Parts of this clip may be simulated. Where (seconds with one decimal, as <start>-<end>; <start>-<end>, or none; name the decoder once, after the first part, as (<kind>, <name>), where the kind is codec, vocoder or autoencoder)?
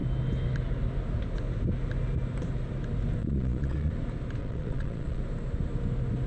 3.2-3.9 (vocoder, Vocos); 4.4-5.2